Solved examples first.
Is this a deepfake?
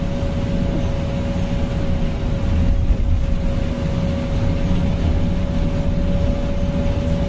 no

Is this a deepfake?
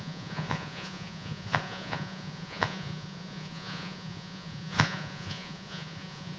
yes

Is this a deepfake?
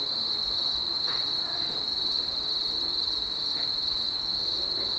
no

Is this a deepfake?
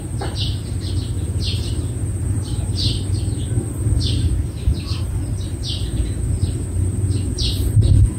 no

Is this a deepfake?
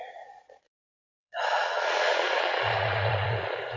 yes